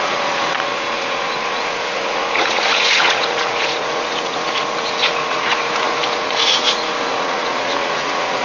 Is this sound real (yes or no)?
no